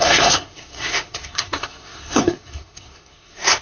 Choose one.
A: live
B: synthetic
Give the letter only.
B